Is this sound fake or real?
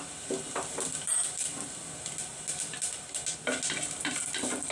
real